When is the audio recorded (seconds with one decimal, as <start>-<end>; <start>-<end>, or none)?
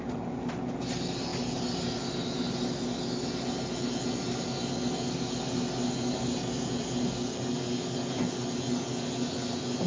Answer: 0.0-9.9